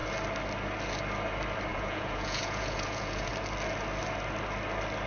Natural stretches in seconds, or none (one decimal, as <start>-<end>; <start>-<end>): 0.0-1.7; 3.3-5.1